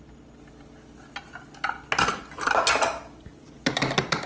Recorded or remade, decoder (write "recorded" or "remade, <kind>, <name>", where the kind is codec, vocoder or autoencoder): recorded